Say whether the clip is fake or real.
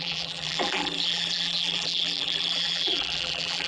fake